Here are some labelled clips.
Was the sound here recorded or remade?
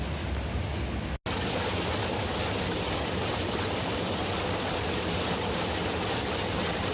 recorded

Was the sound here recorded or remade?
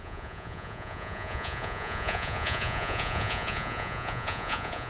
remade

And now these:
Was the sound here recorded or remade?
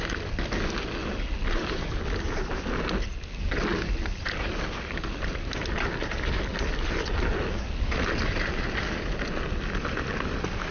recorded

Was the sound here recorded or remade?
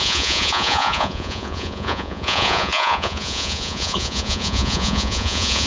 remade